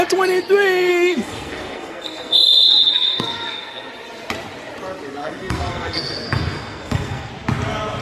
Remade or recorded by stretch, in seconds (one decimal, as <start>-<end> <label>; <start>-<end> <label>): 0.0-0.9 recorded; 0.9-3.9 remade; 3.9-5.2 recorded; 5.2-7.3 remade; 7.3-8.0 recorded